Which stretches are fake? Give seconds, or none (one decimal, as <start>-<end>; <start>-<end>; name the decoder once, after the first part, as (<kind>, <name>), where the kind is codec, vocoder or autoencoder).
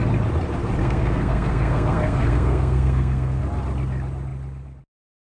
0.8-3.4 (codec, SNAC)